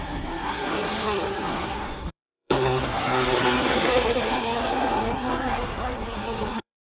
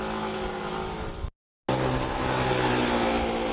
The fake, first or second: first